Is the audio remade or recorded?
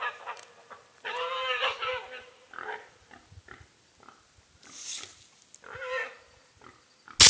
recorded